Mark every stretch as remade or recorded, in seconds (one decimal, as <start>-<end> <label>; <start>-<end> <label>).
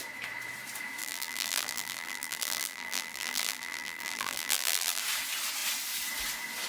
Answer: 0.0-1.0 recorded; 1.0-5.0 remade; 5.0-6.7 recorded